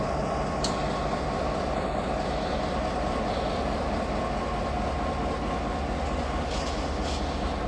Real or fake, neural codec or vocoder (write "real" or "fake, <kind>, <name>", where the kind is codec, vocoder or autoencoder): real